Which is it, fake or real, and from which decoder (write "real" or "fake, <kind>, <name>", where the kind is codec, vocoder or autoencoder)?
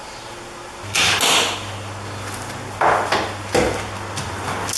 real